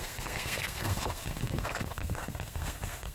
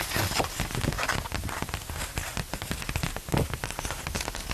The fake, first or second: first